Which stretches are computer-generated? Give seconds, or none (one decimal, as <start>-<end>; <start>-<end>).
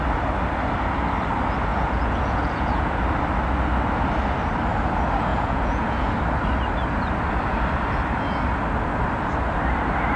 1.7-3.0; 5.3-6.2